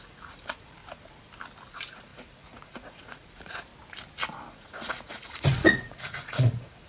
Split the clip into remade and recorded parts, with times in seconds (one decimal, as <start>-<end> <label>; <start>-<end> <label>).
0.0-0.8 remade; 0.8-1.7 recorded; 1.7-3.7 remade; 3.7-4.5 recorded; 4.5-6.9 remade